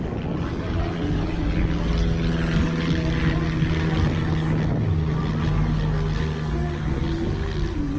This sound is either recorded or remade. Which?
recorded